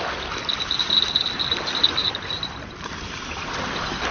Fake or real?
real